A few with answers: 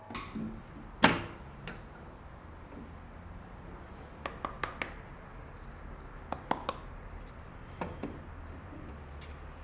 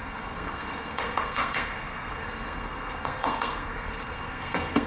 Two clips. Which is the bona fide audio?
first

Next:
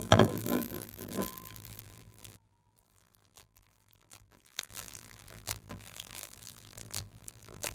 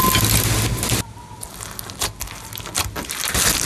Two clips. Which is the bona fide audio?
second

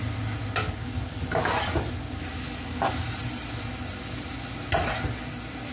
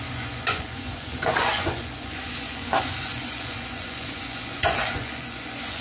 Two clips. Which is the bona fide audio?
first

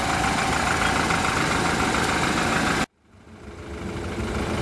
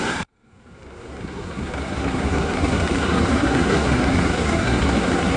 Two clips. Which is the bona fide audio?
first